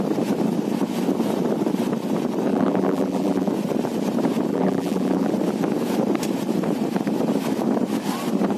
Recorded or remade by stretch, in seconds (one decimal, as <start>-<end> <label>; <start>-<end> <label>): 0.0-2.5 recorded; 2.5-3.5 remade; 3.5-4.5 recorded; 4.5-5.3 remade; 5.3-8.6 recorded